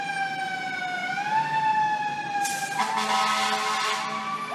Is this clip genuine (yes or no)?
yes